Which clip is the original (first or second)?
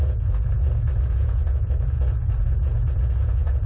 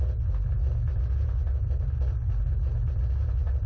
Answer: second